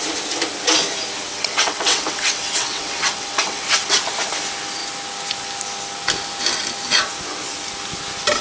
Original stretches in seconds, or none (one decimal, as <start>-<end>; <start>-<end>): 0.0-1.3; 4.0-8.4